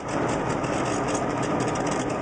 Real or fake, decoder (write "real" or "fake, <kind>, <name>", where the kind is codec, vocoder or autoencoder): real